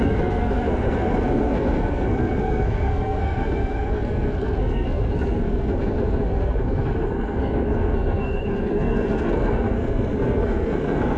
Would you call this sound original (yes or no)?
no